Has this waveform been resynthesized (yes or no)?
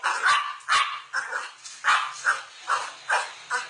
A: no